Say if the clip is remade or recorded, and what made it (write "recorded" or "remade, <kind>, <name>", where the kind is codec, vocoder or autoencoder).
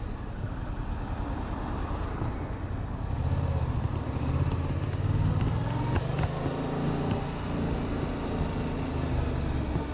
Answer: recorded